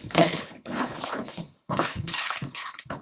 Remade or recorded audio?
remade